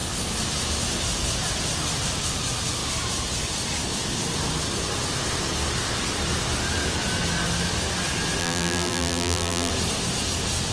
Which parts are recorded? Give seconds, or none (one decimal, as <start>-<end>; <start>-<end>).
0.0-8.4; 9.7-10.7